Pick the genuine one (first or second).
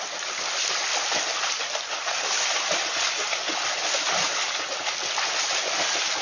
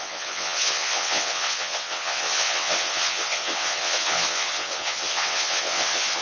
first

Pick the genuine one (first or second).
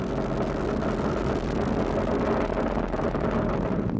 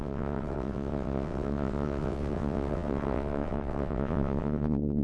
first